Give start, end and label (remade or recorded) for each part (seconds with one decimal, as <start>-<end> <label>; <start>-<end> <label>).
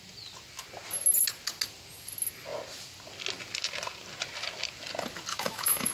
0.0-5.3 recorded; 5.3-5.9 remade